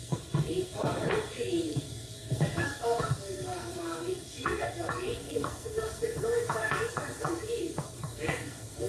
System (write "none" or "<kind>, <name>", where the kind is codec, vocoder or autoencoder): codec, SNAC